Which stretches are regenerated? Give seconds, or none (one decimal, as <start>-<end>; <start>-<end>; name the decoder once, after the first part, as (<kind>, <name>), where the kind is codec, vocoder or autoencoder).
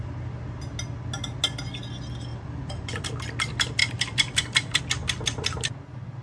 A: 2.3-3.1 (vocoder, BigVGAN v2); 3.8-4.8